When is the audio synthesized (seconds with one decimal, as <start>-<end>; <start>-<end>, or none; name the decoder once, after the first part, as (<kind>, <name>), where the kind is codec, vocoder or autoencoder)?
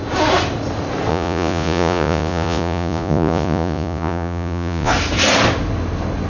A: 1.1-4.9 (vocoder, Vocos)